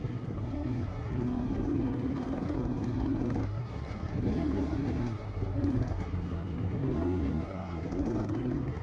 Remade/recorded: remade